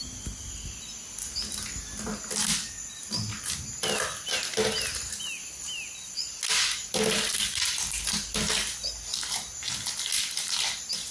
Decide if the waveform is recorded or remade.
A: recorded